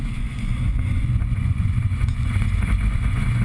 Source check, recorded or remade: remade